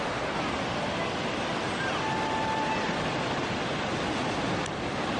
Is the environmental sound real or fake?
real